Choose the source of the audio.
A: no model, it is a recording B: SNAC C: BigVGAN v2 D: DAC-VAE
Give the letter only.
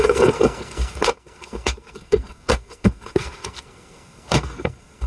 B